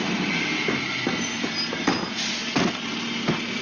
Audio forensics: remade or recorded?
recorded